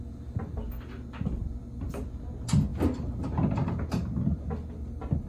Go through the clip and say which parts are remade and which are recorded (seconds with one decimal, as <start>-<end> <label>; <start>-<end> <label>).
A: 0.0-5.3 recorded